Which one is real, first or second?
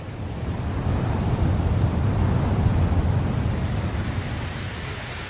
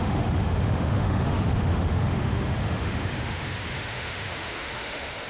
first